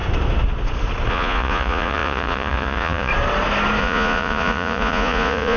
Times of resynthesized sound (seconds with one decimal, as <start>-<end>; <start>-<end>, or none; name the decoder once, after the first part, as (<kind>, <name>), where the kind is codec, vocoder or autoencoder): 1.1-3.1 (vocoder, Vocos); 3.8-5.6